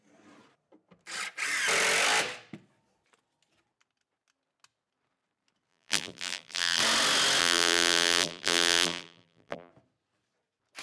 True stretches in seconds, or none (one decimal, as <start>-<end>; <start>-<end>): 0.0-5.7; 6.8-7.4; 9.7-10.8